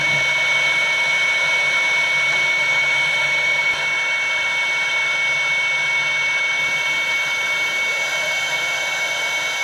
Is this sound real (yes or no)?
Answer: yes